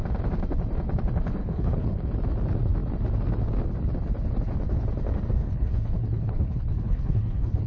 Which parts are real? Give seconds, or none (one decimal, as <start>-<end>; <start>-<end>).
0.0-1.4; 2.1-5.4